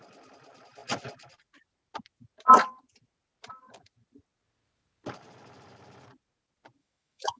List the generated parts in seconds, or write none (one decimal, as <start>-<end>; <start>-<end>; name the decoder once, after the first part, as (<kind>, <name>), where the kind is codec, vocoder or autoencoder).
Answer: 6.8-7.4 (autoencoder, DAC-VAE)